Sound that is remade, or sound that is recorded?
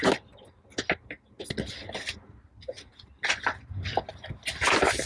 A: recorded